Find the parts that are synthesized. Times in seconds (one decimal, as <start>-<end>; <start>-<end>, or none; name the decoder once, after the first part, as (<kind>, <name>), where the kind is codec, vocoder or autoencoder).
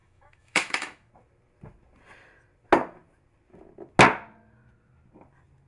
0.0-1.1 (autoencoder, DAC-VAE)